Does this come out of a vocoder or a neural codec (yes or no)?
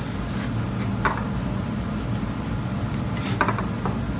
no